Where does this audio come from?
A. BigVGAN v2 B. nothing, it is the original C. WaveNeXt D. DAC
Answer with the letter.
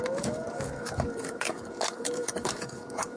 D